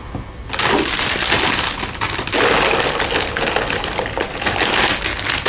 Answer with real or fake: real